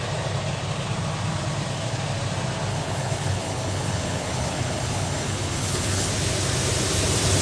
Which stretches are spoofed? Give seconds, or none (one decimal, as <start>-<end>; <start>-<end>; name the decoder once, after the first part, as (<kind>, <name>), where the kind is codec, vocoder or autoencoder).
2.7-6.1 (codec, HILCodec)